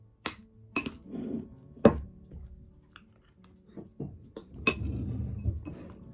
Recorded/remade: recorded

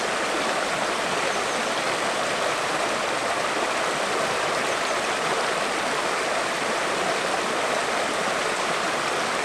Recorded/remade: recorded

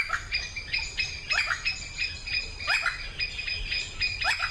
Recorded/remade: recorded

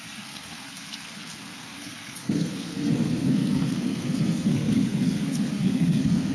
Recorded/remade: remade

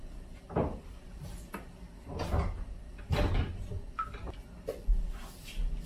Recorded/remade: recorded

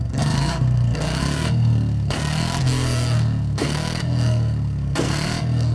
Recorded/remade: remade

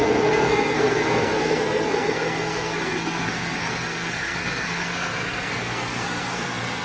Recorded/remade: remade